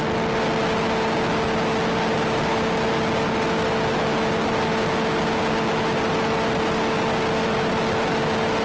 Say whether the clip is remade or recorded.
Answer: recorded